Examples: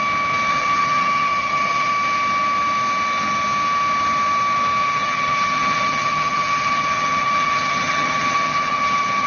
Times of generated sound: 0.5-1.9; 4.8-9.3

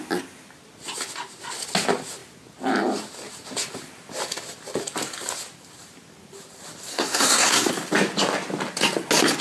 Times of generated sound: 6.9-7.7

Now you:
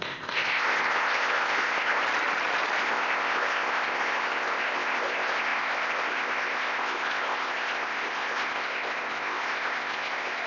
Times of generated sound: 0.0-2.0; 2.8-10.5